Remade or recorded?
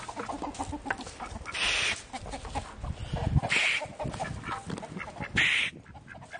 recorded